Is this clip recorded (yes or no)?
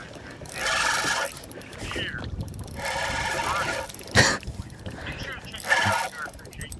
yes